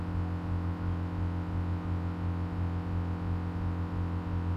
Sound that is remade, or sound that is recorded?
recorded